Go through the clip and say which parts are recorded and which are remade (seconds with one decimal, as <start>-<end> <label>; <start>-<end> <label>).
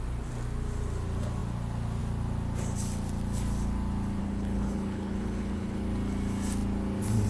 0.0-4.2 recorded; 4.2-5.8 remade; 5.8-7.3 recorded